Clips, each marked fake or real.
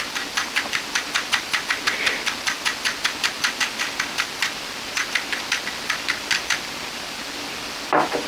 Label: fake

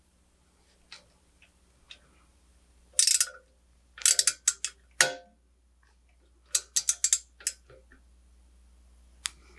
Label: real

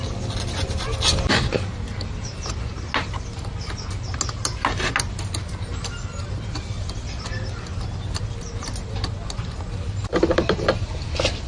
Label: real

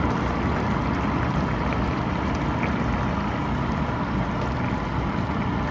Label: real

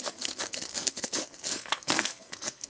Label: fake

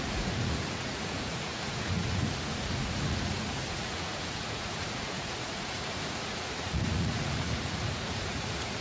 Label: fake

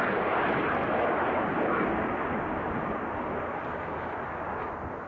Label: real